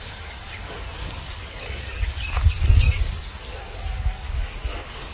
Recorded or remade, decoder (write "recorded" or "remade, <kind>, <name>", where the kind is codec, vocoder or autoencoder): remade, codec, DAC